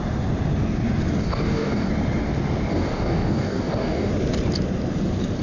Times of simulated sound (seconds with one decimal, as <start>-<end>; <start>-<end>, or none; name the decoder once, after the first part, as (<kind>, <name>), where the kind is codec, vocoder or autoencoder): 1.2-1.9 (codec, DAC); 2.7-4.1